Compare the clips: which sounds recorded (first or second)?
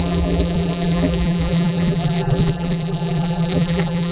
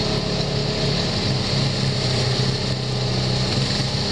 second